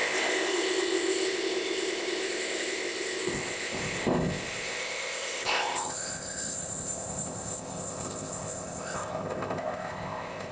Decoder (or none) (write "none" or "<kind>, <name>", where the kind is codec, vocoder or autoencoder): codec, ZipCodec